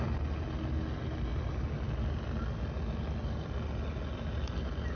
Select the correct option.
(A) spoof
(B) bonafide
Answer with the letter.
B